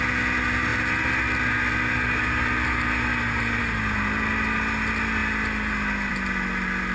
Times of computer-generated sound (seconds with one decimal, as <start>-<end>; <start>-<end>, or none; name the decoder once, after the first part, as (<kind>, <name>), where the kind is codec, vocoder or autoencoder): none